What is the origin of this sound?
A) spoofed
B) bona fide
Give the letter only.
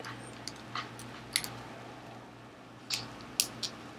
B